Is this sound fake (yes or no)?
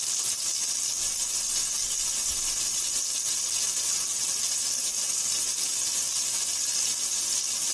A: no